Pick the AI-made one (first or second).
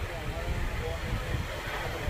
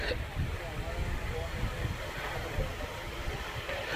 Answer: second